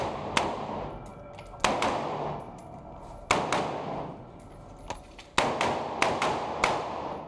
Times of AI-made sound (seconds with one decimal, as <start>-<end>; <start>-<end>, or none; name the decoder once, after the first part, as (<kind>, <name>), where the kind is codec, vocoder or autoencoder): none